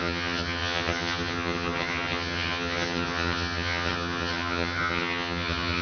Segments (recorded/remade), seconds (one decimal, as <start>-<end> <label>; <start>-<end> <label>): 0.0-5.8 remade